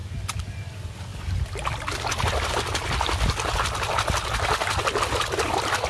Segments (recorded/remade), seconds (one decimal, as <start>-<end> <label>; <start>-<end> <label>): 0.0-0.6 remade; 0.6-5.9 recorded